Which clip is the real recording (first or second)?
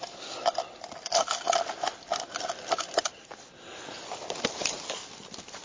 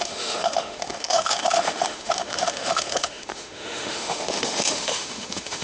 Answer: first